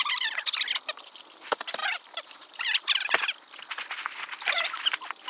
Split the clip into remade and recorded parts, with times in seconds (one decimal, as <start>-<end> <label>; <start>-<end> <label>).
0.0-5.3 recorded